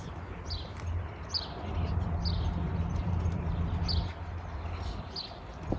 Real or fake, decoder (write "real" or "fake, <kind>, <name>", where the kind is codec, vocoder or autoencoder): real